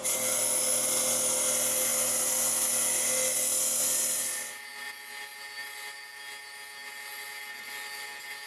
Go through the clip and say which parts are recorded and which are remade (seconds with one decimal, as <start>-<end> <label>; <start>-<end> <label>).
0.0-8.5 recorded